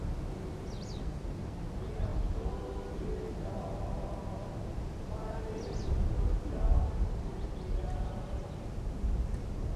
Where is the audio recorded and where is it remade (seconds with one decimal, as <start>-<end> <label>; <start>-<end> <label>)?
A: 0.0-1.0 recorded; 1.0-1.7 remade; 1.7-9.8 recorded